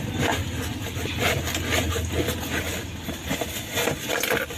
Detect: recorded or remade recorded